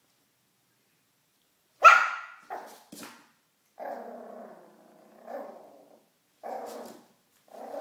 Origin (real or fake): real